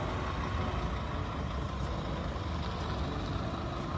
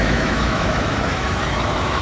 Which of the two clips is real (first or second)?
first